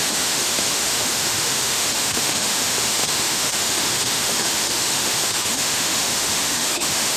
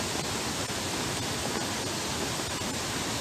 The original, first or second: second